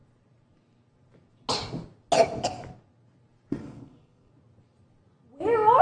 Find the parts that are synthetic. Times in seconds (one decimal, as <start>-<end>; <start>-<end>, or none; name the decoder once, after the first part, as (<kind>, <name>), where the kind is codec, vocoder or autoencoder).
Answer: 3.5-4.3 (codec, SNAC)